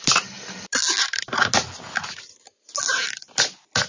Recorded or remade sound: recorded